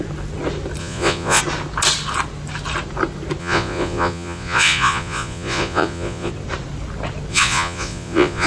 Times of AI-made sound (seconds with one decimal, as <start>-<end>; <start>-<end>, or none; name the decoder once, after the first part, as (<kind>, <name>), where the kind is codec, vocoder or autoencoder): 0.8-1.4 (vocoder, Vocos); 3.4-6.3; 7.3-8.5